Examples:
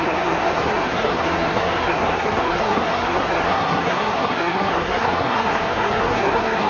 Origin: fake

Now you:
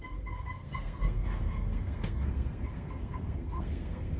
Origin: fake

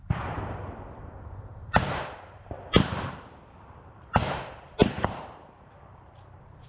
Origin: fake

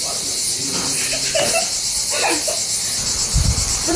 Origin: real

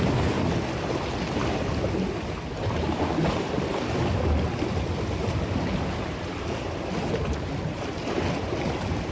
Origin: real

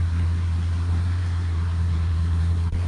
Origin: fake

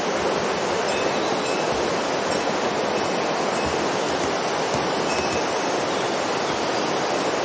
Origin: real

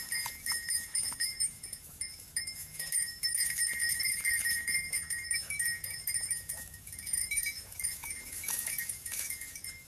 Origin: fake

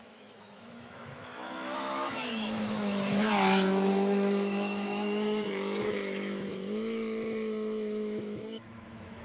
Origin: fake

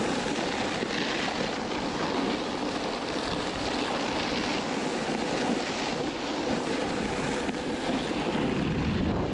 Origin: real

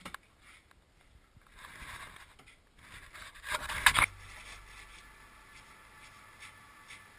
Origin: real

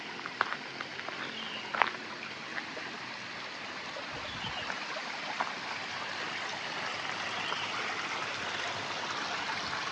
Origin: real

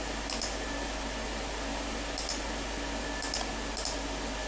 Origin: real